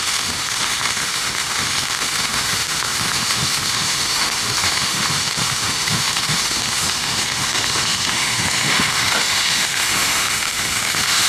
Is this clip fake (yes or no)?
yes